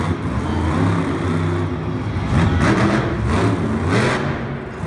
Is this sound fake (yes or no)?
no